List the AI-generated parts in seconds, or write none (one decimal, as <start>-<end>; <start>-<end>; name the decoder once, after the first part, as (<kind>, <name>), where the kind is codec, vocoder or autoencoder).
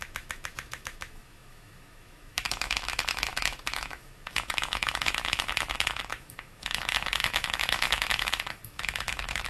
0.0-9.5 (autoencoder, DAC-VAE)